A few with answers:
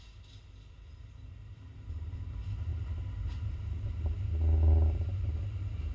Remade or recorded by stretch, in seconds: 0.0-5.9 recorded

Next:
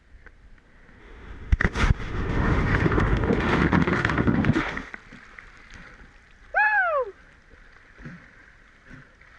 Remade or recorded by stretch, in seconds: 0.0-1.0 recorded; 1.0-4.9 remade; 4.9-9.4 recorded

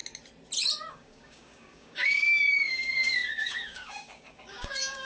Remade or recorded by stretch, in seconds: 0.0-0.9 recorded; 0.9-5.1 remade